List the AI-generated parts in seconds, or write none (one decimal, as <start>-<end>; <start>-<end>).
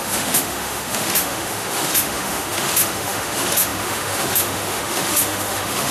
0.0-5.9